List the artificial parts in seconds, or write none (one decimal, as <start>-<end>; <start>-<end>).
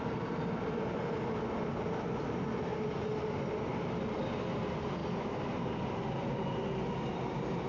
none